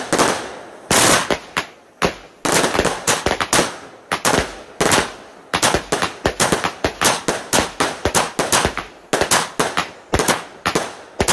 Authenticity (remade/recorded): recorded